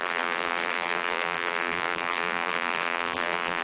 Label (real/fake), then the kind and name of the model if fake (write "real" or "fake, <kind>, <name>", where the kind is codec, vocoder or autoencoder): fake, vocoder, BigVGAN v2